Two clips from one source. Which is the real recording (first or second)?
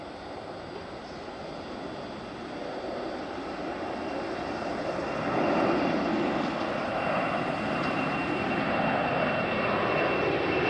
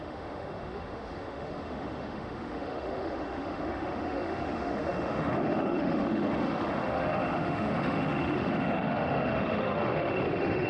first